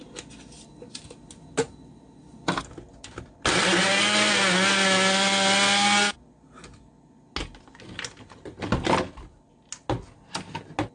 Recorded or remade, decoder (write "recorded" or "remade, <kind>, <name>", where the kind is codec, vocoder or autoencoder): recorded